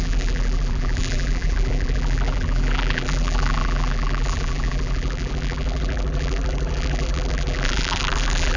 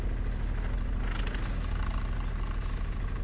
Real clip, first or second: second